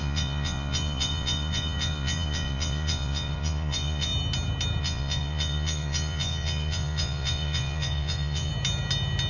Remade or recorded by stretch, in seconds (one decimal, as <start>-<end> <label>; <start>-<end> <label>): 0.0-4.1 remade; 4.1-4.8 recorded; 4.8-8.5 remade; 8.5-9.3 recorded

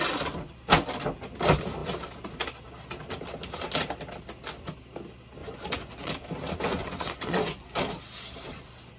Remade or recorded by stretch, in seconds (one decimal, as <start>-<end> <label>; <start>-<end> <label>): 0.0-5.4 recorded; 5.4-6.1 remade; 6.1-6.8 recorded; 6.8-7.7 remade; 7.7-9.0 recorded

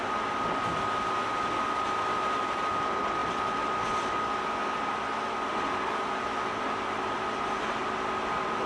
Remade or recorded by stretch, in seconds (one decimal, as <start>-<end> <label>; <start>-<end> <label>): 0.0-8.7 recorded